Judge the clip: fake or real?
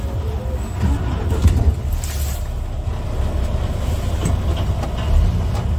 real